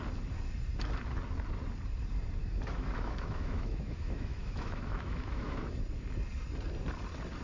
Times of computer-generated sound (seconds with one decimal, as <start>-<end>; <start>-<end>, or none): 2.4-5.8